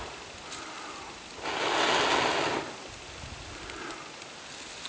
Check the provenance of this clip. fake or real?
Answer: real